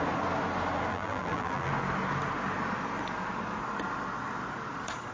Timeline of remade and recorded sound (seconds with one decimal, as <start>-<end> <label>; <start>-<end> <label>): 0.0-0.9 recorded; 0.9-1.7 remade; 1.7-5.1 recorded